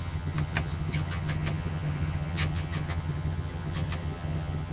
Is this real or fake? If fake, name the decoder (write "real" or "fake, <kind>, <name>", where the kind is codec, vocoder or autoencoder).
fake, vocoder, HiFi-GAN